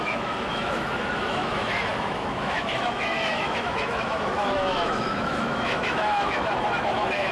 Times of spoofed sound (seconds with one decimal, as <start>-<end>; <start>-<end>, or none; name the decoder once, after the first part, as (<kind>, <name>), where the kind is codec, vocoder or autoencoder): 0.0-7.3 (autoencoder, DAC-VAE)